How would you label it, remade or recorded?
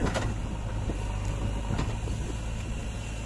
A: recorded